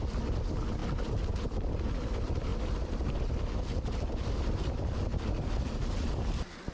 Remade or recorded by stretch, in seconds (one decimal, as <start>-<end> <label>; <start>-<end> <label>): 0.0-6.7 recorded